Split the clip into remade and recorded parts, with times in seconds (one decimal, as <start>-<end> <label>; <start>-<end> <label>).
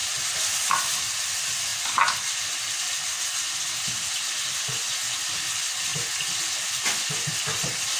0.0-8.0 recorded